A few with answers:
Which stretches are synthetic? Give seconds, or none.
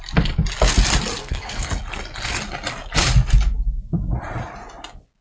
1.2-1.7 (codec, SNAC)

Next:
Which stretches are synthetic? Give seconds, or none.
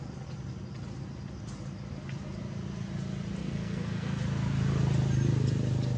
3.4-4.2 (codec, SNAC)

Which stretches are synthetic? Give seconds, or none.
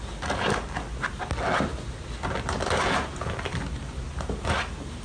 none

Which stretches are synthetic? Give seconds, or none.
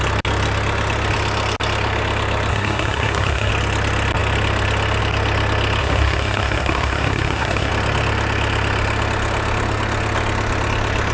2.5-3.5 (codec, SNAC); 5.8-7.7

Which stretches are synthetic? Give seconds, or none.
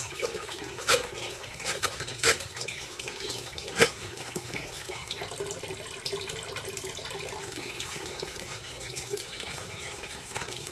0.0-5.2 (codec, SNAC); 7.4-10.7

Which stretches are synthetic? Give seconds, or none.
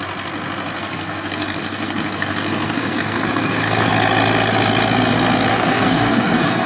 0.8-3.9 (codec, SNAC); 5.5-6.7